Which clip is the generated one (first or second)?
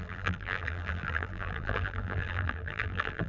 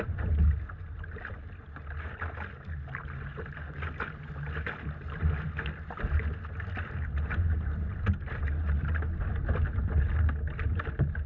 first